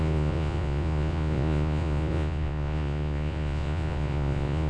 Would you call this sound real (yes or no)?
no